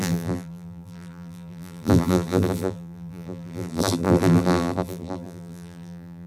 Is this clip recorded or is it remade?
remade